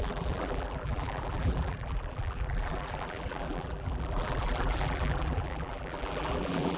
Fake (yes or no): yes